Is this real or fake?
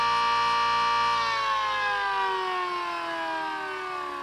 real